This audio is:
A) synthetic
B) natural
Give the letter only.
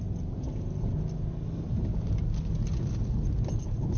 B